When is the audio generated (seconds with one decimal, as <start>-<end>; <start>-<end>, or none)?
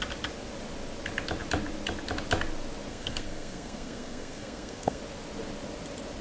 2.9-5.0